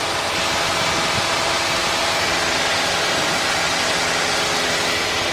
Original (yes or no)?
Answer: yes